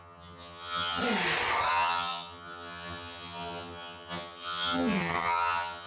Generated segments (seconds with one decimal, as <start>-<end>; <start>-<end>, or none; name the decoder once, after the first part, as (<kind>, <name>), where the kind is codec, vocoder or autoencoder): 0.0-1.0 (vocoder, HiFi-GAN); 1.7-5.9